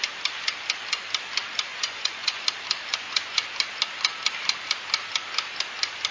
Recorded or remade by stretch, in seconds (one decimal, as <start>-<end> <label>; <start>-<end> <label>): 0.0-1.7 recorded; 1.7-2.4 remade; 2.4-2.9 recorded; 2.9-3.5 remade; 3.5-6.1 recorded